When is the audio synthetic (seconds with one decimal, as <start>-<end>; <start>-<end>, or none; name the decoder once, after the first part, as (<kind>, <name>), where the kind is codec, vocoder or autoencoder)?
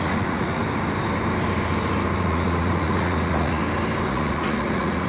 0.0-0.6 (vocoder, Vocos); 2.2-3.6; 4.1-5.1